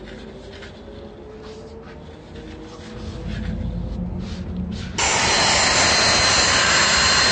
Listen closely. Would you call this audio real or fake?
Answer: real